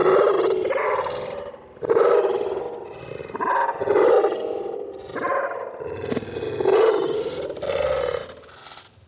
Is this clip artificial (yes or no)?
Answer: no